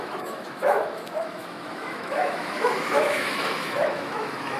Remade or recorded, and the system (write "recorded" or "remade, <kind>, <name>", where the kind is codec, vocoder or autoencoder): remade, autoencoder, DAC-VAE